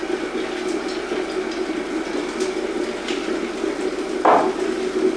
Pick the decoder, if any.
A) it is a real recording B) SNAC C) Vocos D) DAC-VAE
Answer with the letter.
A